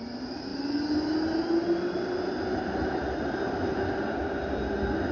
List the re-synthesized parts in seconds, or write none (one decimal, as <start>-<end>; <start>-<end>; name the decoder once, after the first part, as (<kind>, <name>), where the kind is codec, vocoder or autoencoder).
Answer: none